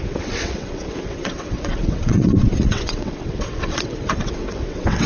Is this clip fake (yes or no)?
yes